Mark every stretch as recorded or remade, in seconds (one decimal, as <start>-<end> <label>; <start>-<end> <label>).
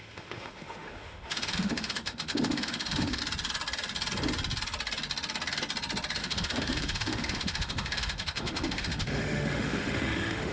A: 0.0-3.2 remade; 3.2-6.2 recorded; 6.2-10.5 remade